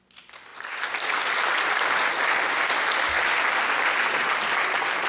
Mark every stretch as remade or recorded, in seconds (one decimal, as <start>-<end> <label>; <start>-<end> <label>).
0.0-5.1 recorded